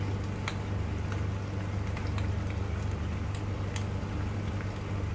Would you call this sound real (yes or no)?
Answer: yes